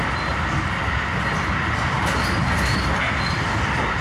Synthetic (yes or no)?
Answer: no